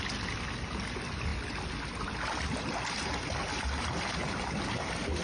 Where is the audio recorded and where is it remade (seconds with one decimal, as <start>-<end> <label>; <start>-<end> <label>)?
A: 0.0-5.2 recorded